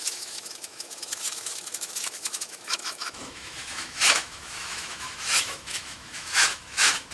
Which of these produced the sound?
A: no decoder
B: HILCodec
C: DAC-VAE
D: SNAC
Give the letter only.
C